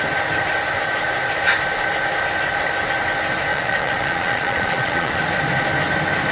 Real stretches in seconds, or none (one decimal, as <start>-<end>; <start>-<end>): 0.0-3.5; 5.2-6.3

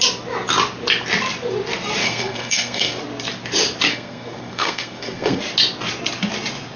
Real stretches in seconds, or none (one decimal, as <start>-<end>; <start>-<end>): 0.0-2.0; 3.0-3.9; 5.4-6.8